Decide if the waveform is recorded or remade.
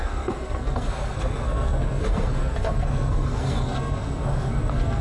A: remade